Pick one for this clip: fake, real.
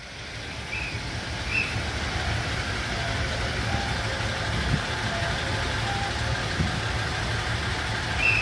real